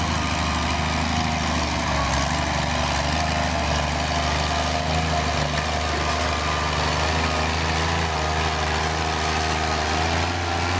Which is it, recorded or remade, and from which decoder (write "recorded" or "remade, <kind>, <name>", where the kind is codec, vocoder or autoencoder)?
recorded